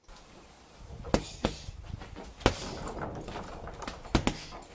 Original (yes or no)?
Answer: yes